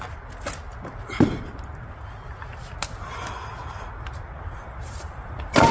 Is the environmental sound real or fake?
real